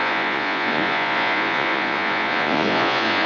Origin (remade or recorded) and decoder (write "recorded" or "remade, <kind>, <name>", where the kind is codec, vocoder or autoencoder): remade, vocoder, Vocos